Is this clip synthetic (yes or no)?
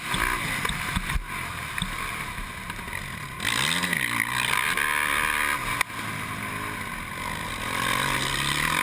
no